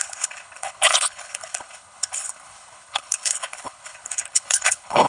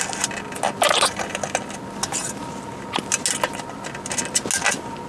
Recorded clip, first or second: second